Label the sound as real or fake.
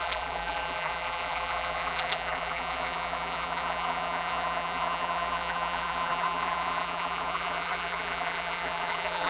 fake